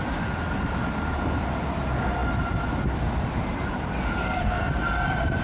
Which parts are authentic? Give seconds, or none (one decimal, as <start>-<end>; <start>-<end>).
0.0-4.2; 4.7-5.4